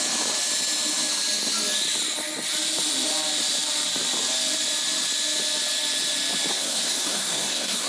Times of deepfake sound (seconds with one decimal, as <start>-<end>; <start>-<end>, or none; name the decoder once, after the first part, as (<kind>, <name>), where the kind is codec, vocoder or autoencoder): 6.5-7.9 (codec, SNAC)